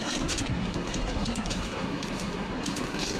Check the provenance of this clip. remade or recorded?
remade